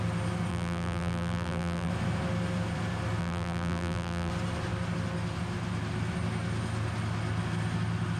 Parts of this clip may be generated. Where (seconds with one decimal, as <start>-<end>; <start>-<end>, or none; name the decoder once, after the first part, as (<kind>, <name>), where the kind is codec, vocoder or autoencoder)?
0.5-1.9 (vocoder, BigVGAN v2); 3.2-4.3